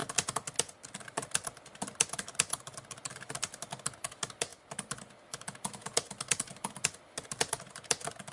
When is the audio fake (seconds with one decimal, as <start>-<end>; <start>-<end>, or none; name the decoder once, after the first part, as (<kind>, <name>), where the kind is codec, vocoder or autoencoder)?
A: none